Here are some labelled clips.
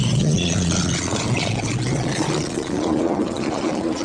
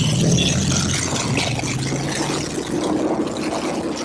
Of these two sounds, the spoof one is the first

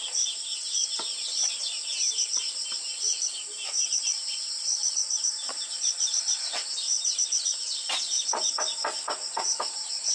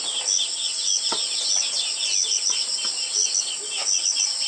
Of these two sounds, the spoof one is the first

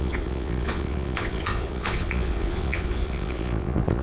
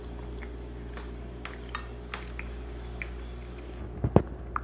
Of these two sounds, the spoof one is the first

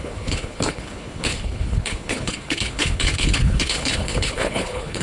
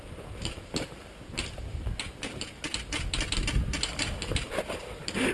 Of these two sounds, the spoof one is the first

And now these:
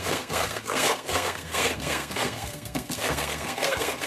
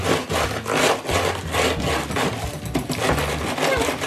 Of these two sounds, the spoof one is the first